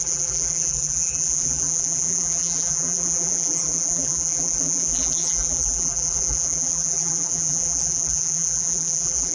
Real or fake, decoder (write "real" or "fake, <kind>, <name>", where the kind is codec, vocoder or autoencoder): fake, vocoder, BigVGAN v2